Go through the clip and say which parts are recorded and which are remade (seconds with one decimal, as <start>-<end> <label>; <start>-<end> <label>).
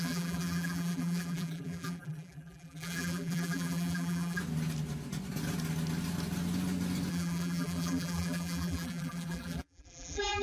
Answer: 0.0-4.4 remade; 4.4-7.1 recorded; 7.1-10.4 remade